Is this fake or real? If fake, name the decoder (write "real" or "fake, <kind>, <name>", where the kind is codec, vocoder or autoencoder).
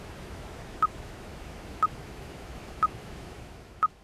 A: fake, autoencoder, DAC-VAE